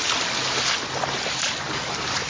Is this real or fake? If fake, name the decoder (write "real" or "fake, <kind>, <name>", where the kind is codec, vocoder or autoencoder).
real